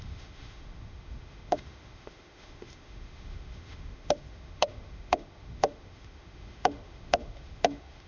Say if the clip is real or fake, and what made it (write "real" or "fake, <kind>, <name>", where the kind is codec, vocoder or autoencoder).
fake, autoencoder, DAC-VAE